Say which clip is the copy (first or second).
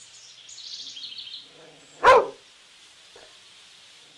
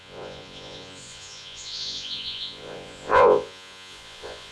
second